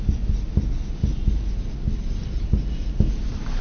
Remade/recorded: recorded